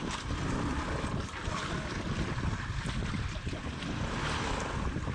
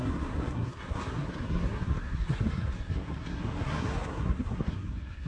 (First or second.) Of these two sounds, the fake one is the second